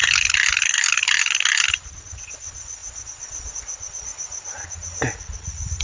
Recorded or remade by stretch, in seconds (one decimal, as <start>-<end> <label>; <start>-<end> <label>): 0.0-1.9 recorded; 1.9-4.1 remade; 4.1-5.8 recorded